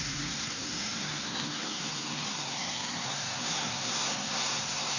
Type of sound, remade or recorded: remade